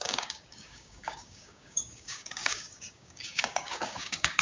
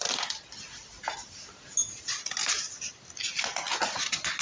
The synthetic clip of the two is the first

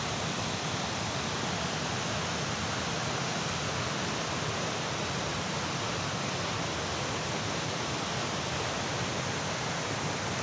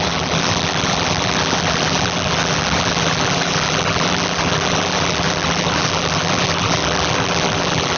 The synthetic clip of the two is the second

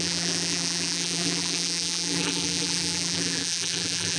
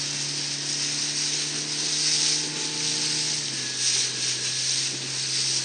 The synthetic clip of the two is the first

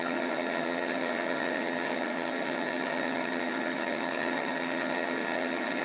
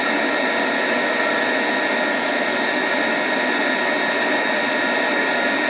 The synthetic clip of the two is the first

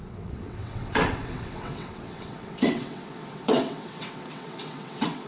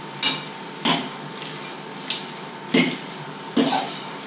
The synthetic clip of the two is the first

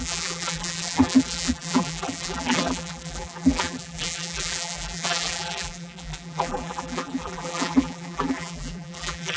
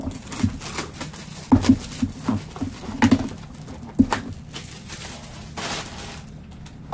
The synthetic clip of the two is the first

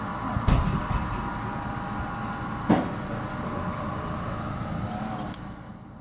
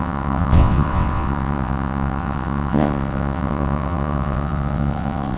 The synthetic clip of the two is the second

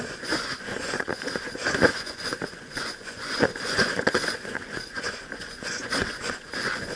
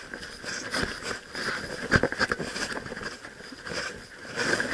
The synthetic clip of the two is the first